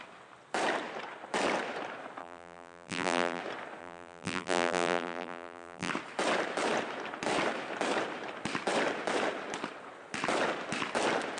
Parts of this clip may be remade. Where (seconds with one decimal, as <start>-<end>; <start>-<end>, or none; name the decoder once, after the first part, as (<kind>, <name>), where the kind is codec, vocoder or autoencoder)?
2.2-3.4 (vocoder, BigVGAN v2); 3.8-5.9